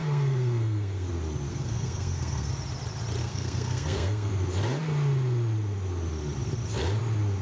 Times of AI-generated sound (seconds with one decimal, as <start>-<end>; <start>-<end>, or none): 0.0-1.1; 1.5-2.5; 3.2-4.3